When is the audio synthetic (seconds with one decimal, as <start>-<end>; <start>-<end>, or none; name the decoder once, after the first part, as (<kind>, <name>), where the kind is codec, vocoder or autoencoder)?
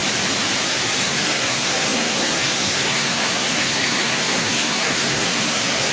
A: 0.6-5.9 (codec, SNAC)